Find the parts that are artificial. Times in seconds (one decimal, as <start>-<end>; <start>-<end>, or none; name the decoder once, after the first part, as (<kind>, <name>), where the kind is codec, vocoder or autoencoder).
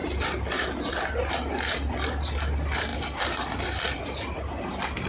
none